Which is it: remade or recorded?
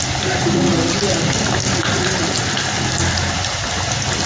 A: recorded